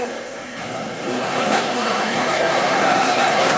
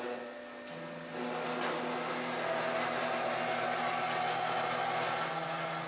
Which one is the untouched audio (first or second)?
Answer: second